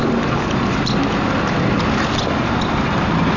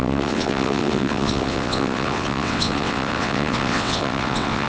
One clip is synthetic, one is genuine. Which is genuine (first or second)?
first